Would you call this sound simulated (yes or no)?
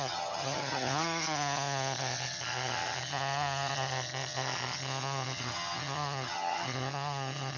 yes